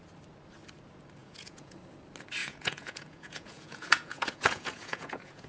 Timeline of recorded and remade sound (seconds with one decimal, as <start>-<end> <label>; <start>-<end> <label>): 0.0-1.2 recorded; 1.2-1.8 remade; 1.8-2.4 recorded; 2.4-5.5 remade